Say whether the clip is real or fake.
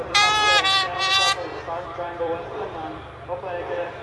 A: fake